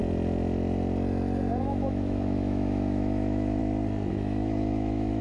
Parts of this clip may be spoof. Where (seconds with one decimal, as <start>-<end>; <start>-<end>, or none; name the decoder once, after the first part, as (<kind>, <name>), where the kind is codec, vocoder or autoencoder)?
1.6-3.6 (autoencoder, DAC-VAE); 4.1-5.2